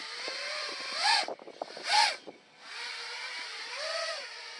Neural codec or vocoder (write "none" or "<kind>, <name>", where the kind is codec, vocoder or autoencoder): none